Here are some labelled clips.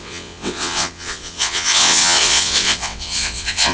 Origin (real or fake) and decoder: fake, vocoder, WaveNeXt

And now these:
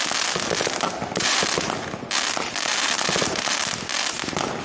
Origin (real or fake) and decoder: real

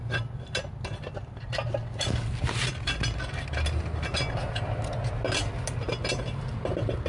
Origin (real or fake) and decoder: real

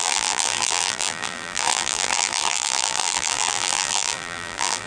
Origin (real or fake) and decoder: fake, vocoder, BigVGAN v2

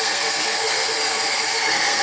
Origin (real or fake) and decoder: fake, codec, SNAC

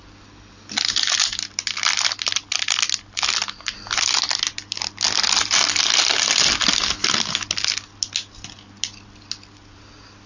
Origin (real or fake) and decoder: real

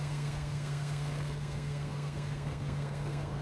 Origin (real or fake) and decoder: fake, codec, SNAC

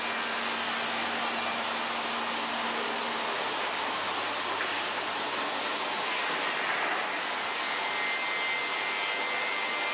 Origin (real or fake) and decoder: real